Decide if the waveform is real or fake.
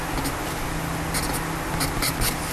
real